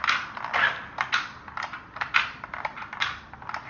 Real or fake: real